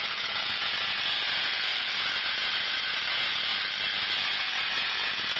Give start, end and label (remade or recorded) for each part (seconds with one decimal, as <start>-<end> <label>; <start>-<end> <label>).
0.0-3.5 remade; 3.5-4.3 recorded; 4.3-5.4 remade